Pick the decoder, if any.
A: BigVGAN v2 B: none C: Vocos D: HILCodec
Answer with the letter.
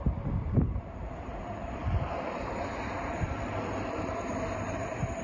A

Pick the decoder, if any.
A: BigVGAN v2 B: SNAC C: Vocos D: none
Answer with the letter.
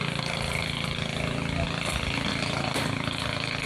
A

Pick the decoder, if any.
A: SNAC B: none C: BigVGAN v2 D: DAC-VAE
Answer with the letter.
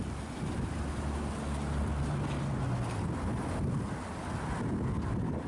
B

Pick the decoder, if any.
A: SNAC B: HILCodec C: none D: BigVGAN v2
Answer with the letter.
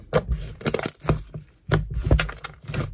C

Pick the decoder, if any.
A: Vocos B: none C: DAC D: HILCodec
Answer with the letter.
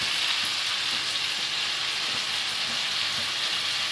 B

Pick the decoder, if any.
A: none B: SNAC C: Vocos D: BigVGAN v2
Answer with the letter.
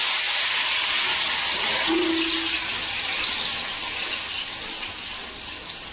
A